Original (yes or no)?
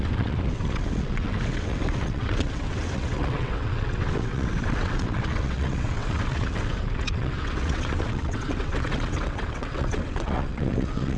no